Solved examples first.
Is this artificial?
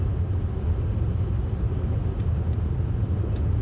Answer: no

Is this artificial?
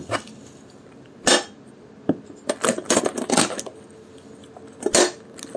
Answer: no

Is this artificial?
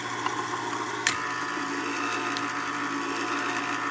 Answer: no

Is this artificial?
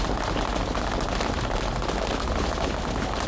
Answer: no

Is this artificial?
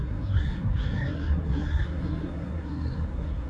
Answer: yes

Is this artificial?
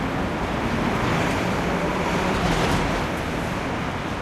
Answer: no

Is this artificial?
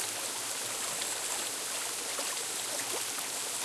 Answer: no